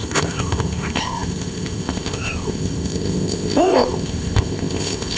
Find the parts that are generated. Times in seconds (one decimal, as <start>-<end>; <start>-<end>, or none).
0.0-5.2

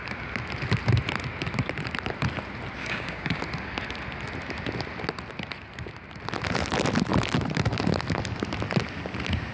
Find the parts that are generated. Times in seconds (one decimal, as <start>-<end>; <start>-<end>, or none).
2.8-3.4

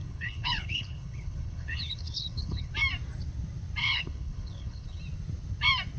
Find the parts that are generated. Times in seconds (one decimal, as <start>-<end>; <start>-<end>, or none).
0.0-2.7; 3.8-5.0

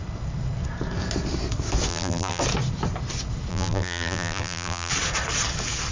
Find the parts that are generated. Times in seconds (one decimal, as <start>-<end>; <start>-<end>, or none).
1.9-2.4; 3.5-4.9

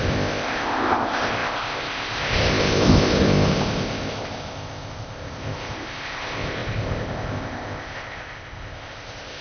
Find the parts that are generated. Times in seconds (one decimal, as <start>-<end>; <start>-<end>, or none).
0.0-9.4